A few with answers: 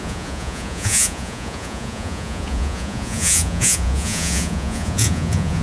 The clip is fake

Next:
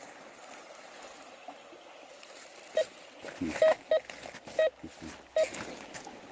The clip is real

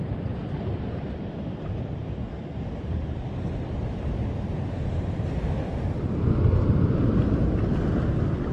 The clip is real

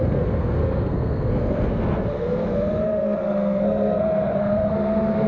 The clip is fake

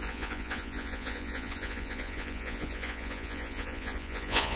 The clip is fake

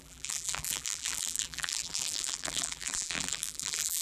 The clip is fake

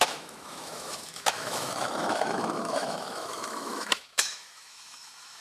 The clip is fake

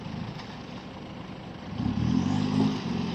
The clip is real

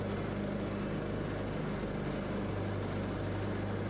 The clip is real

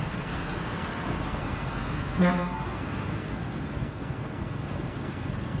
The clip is fake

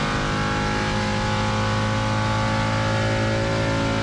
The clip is real